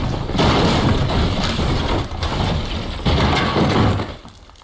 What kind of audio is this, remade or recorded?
recorded